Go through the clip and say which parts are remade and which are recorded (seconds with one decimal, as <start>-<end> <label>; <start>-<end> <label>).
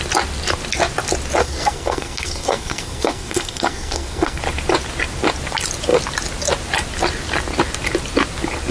0.0-1.4 recorded; 1.4-4.4 remade; 4.4-8.7 recorded